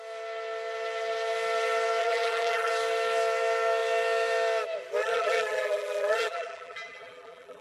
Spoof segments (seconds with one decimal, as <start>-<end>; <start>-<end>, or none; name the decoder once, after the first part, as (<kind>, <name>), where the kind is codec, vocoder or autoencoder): 2.0-2.7 (vocoder, BigVGAN v2); 5.0-7.6